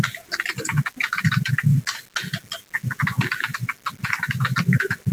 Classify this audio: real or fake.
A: real